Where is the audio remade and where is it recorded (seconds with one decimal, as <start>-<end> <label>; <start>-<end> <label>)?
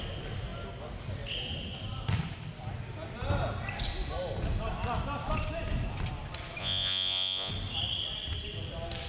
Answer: 0.0-6.6 recorded; 6.6-7.5 remade; 7.5-9.1 recorded